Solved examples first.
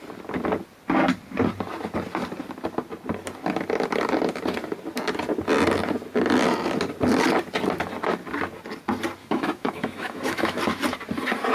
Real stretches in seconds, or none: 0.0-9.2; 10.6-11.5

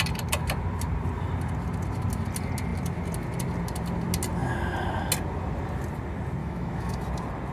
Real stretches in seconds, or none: 0.0-6.4; 7.0-7.5